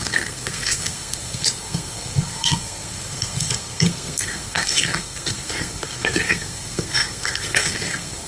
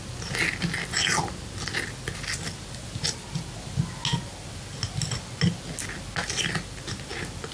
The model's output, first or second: first